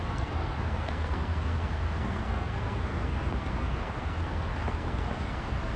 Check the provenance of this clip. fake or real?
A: fake